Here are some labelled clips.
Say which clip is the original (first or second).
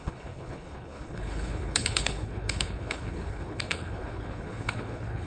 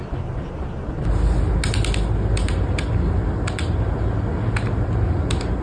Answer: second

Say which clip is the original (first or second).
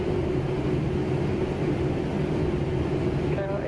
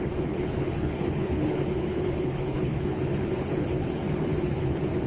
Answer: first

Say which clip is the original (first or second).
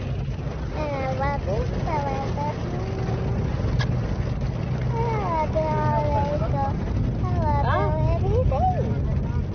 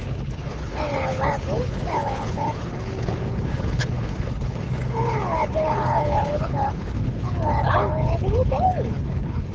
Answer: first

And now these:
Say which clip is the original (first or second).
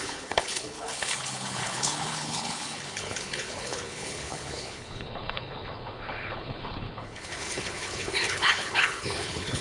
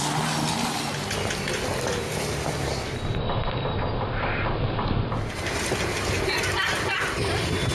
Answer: second